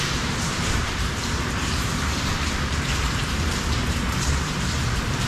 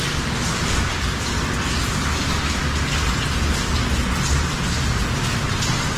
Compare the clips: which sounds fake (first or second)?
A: first